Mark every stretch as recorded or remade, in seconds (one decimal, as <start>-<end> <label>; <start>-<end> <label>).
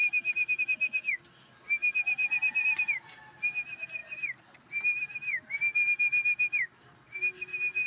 0.0-4.0 recorded; 4.0-5.6 remade; 5.6-7.9 recorded